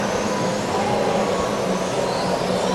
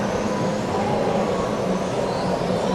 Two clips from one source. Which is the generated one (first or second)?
second